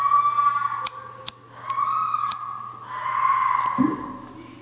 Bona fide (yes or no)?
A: yes